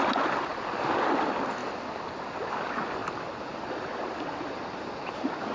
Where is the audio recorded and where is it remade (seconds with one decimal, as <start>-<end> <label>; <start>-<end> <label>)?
0.0-5.5 recorded